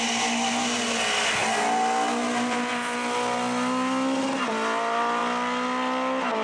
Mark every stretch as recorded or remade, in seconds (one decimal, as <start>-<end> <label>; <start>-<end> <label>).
0.0-6.4 recorded